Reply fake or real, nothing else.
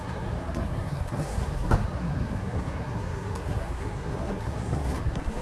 fake